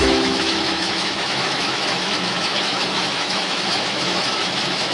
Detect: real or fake fake